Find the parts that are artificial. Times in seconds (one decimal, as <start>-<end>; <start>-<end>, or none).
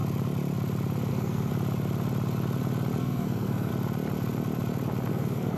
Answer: 1.1-1.5; 3.0-3.7; 5.1-5.6